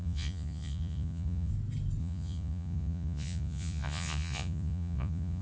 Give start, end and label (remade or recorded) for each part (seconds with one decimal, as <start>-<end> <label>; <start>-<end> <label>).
0.0-1.5 remade; 1.5-2.0 recorded; 2.0-5.4 remade